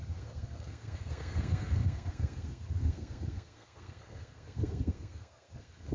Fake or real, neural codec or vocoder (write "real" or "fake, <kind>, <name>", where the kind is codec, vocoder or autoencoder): fake, codec, SNAC